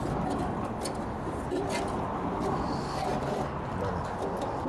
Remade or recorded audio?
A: recorded